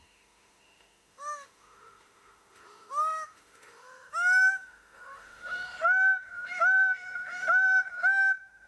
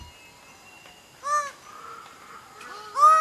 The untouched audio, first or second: second